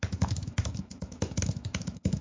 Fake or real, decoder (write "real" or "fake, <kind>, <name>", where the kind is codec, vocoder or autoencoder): fake, autoencoder, DAC-VAE